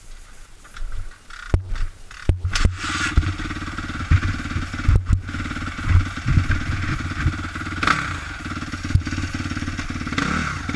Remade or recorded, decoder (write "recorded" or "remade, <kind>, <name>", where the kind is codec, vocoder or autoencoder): recorded